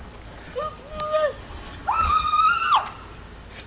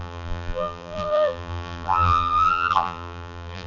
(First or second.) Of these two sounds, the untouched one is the first